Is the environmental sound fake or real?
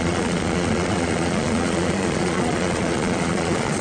fake